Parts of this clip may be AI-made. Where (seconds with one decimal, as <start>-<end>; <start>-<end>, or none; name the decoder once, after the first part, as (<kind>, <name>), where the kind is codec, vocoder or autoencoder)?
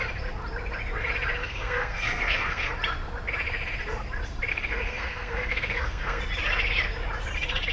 1.4-2.7 (codec, SNAC); 4.5-6.2